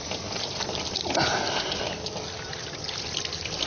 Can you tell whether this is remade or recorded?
recorded